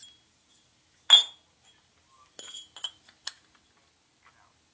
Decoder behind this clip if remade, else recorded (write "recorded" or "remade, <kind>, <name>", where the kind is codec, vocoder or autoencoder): recorded